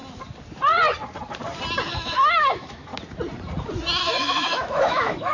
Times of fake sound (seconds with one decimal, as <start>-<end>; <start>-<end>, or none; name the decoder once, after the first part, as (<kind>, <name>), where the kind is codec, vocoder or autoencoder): 1.9-2.9 (autoencoder, DAC-VAE); 4.0-5.3

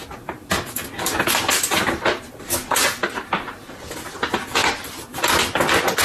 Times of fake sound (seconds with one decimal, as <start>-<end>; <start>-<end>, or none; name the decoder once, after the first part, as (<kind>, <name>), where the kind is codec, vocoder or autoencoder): 4.6-5.3 (vocoder, BigVGAN v2)

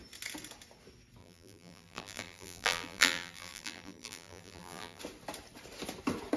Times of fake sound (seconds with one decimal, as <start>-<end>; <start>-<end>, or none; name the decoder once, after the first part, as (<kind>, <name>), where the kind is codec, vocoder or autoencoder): 1.2-5.0 (vocoder, BigVGAN v2)

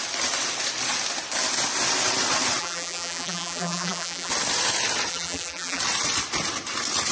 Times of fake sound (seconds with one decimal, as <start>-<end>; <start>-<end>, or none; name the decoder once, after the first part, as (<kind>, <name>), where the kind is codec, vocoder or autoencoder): 2.6-4.3 (vocoder, BigVGAN v2); 5.1-5.8

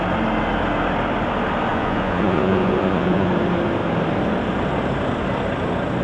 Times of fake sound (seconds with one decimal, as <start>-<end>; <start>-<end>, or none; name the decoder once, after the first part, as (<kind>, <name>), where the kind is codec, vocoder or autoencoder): 1.7-3.3 (vocoder, Vocos)

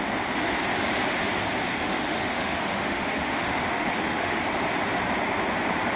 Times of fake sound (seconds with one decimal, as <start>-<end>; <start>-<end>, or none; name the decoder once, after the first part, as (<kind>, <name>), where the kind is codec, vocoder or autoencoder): 1.7-4.4 (autoencoder, DAC-VAE)